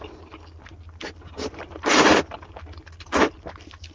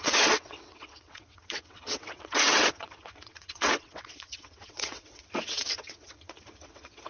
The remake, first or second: second